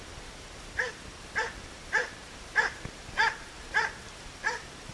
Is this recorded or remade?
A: remade